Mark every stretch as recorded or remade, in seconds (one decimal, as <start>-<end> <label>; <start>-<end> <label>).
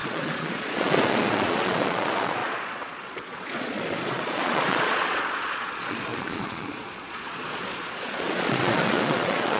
0.0-9.6 remade